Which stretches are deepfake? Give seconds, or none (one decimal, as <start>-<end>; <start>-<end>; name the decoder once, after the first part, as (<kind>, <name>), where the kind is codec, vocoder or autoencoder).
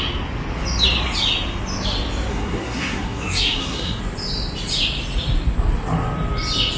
2.3-4.0 (codec, SNAC)